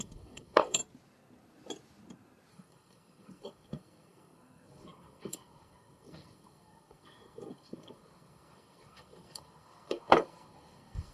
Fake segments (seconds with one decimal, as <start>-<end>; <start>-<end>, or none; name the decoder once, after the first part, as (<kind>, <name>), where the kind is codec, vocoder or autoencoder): 0.0-0.8 (codec, SNAC); 2.5-11.1